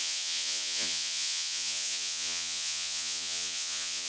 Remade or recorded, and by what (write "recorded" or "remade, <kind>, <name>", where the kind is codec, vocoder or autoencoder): remade, vocoder, Vocos